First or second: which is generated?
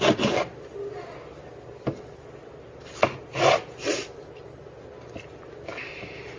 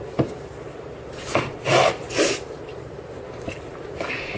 second